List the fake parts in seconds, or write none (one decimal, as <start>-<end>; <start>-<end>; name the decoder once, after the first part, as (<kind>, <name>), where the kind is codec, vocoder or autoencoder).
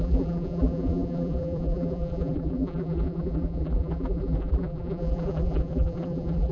0.0-6.5 (vocoder, BigVGAN v2)